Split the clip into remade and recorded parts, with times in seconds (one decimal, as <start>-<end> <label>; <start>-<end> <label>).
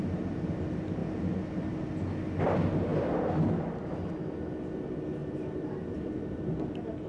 0.0-5.2 recorded; 5.2-7.1 remade